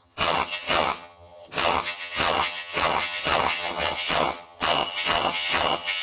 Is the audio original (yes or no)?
no